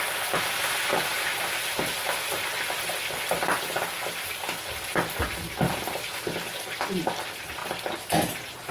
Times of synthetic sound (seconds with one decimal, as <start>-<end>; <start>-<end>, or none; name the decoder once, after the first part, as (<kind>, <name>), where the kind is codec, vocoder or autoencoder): none